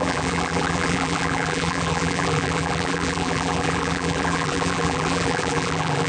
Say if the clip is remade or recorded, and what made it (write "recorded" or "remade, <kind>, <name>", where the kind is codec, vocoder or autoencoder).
remade, vocoder, BigVGAN v2